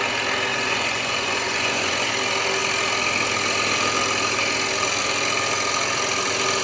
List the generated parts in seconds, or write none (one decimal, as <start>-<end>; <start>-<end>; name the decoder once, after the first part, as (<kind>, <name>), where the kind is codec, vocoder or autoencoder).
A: 0.5-2.1 (vocoder, Vocos)

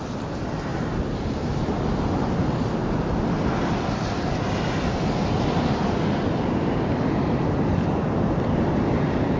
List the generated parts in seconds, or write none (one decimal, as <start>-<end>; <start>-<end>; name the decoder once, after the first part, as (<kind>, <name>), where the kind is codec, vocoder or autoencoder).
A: none

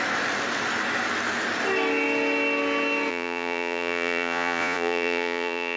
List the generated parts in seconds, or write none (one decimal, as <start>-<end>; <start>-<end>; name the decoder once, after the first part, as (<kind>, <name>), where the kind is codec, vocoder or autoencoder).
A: 3.1-5.8 (vocoder, Vocos)

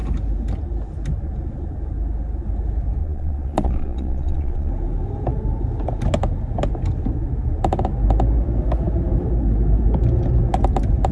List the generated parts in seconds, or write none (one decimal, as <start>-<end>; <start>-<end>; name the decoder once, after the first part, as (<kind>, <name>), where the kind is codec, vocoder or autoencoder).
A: 3.0-4.7 (vocoder, Vocos)

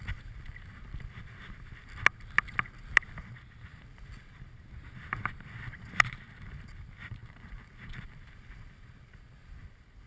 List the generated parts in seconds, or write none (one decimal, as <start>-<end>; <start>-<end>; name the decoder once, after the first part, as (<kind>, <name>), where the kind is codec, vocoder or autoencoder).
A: none